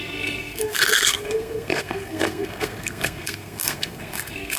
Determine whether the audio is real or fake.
fake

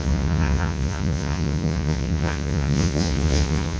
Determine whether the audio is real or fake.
fake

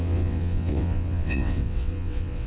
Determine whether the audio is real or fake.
fake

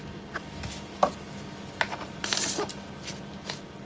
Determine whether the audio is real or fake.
real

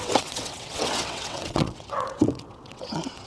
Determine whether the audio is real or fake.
fake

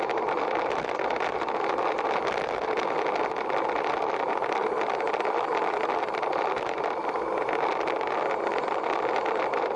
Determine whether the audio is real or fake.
real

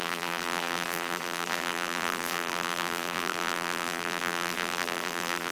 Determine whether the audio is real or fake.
fake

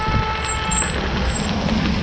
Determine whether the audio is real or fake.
real